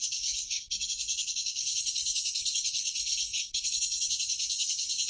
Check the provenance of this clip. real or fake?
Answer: fake